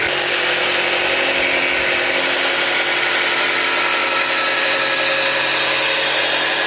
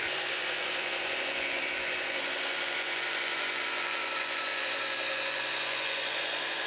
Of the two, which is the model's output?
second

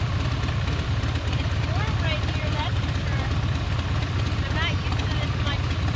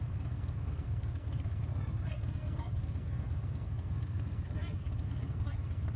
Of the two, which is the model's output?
second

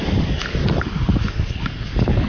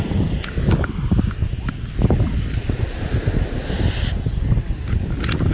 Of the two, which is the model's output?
first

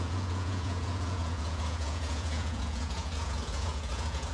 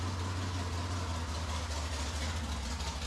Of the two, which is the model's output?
first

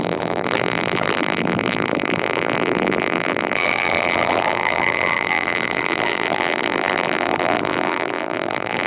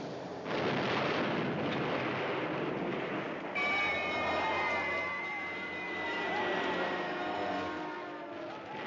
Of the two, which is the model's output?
first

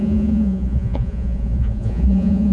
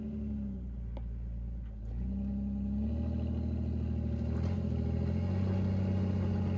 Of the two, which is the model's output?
first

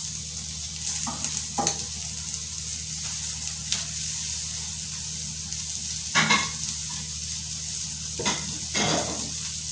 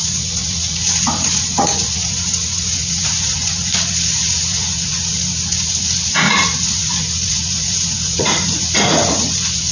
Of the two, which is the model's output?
second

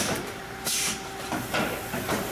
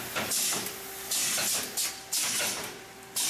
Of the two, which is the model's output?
first